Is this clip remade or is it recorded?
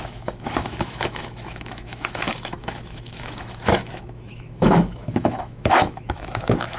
remade